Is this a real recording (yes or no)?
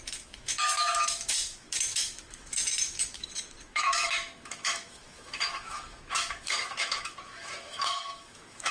no